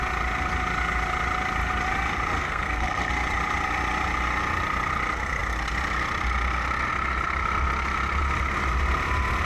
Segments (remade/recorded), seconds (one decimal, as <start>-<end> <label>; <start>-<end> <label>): 0.0-2.4 recorded; 2.4-3.1 remade; 3.1-9.5 recorded